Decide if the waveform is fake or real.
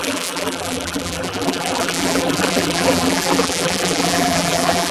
fake